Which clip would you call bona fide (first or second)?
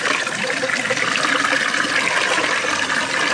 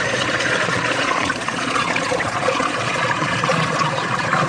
first